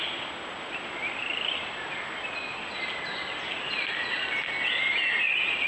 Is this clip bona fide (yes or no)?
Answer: yes